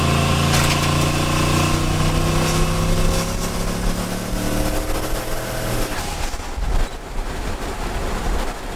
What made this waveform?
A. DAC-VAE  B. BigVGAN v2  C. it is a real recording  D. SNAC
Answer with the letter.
C